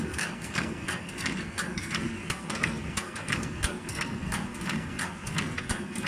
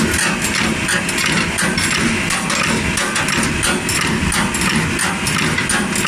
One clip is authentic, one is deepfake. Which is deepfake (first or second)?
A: first